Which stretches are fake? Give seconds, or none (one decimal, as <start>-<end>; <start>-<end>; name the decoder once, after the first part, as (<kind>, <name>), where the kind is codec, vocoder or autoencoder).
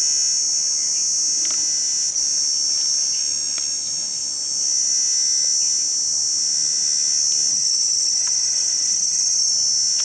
7.5-9.5 (vocoder, HiFi-GAN)